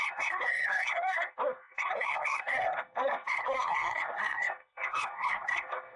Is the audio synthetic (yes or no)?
yes